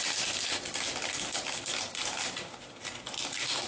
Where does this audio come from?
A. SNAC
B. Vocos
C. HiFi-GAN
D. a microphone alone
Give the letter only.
D